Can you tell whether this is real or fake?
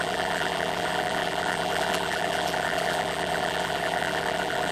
fake